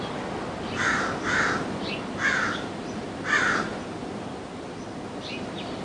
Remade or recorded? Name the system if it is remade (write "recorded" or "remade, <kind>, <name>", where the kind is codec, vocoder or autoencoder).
recorded